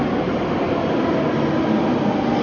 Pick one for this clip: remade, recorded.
recorded